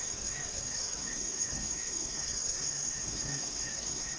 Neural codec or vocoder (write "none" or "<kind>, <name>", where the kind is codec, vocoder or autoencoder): codec, SNAC